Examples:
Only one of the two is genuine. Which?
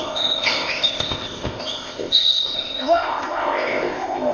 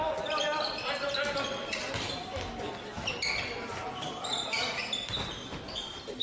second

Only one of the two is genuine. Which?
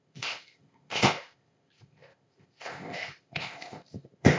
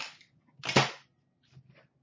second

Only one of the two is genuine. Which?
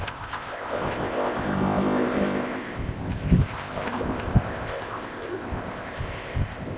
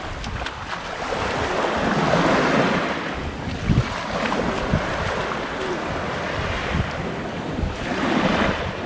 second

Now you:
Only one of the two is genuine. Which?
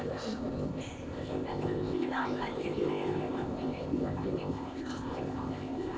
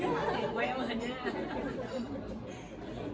second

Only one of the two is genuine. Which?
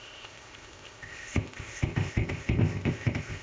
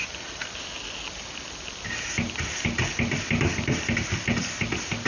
second